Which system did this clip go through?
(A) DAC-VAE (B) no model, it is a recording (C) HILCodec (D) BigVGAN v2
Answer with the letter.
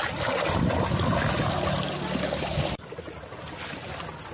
B